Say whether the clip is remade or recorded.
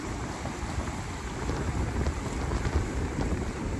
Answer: recorded